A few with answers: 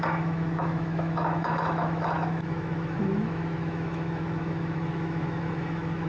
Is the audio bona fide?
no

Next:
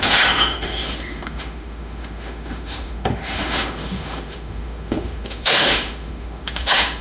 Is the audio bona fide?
no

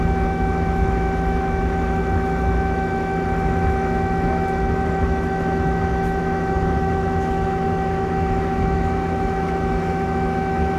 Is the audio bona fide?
no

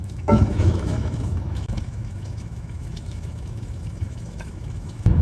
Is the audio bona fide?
no